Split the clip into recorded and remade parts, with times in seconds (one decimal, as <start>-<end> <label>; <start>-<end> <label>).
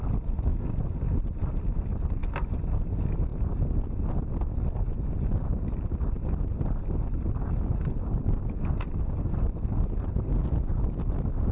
0.0-0.5 recorded; 0.5-1.4 remade; 1.4-10.4 recorded; 10.4-11.1 remade; 11.1-11.5 recorded